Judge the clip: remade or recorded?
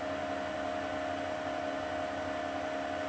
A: recorded